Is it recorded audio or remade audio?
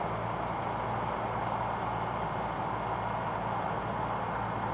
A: recorded